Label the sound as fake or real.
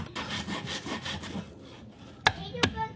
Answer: real